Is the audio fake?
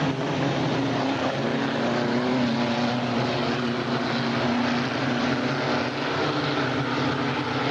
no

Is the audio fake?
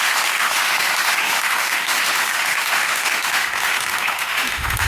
yes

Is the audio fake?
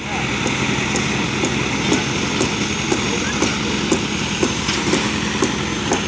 no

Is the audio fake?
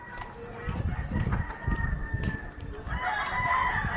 no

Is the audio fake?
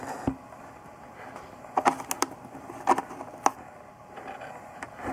no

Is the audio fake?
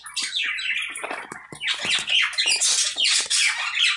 no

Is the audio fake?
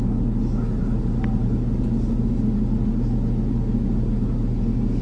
no